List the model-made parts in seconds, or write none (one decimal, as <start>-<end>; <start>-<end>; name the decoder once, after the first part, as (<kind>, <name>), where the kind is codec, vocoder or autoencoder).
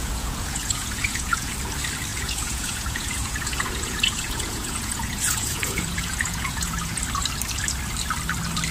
0.0-1.5 (vocoder, Vocos); 2.1-7.0